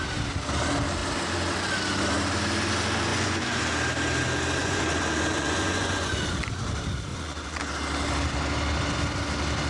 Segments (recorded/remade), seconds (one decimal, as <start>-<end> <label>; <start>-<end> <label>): 0.0-3.1 recorded; 3.1-3.6 remade; 3.6-4.6 recorded; 4.6-6.1 remade; 6.1-7.1 recorded; 7.1-7.6 remade; 7.6-9.7 recorded